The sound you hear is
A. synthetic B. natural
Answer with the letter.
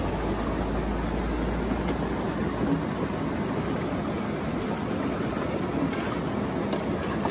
B